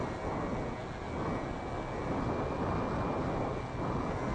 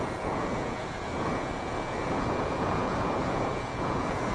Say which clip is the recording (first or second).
first